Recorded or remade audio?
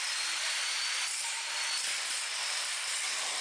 recorded